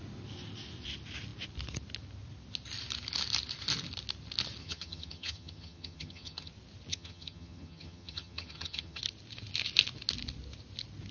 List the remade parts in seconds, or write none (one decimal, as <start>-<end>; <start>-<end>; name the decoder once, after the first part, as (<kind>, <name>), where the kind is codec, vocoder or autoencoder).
4.6-6.5 (vocoder, HiFi-GAN); 6.9-9.0